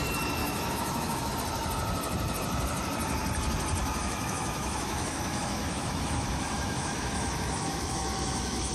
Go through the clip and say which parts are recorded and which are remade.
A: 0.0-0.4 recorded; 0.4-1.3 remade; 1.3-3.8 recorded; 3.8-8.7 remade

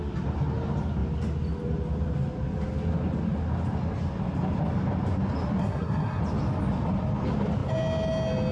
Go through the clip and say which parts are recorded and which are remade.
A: 0.0-5.6 recorded; 5.6-6.2 remade; 6.2-8.5 recorded

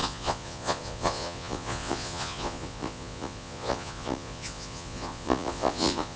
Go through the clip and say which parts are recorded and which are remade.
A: 0.0-6.2 remade

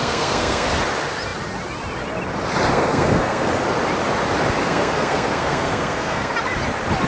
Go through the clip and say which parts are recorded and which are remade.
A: 0.0-0.7 remade; 0.7-2.7 recorded; 2.7-3.5 remade; 3.5-4.6 recorded; 4.6-6.3 remade; 6.3-7.1 recorded